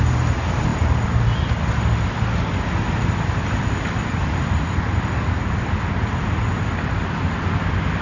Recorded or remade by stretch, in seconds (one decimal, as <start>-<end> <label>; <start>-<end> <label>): 0.0-8.0 recorded